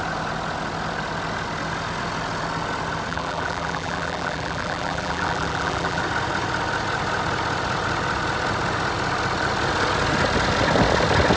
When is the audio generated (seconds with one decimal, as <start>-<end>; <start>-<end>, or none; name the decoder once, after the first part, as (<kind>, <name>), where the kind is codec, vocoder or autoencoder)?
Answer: 3.1-6.0 (vocoder, BigVGAN v2)